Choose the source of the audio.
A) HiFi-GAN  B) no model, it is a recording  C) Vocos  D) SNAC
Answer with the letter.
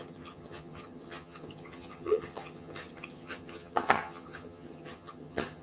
A